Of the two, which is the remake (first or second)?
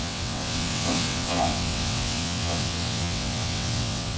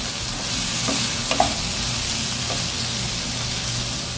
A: first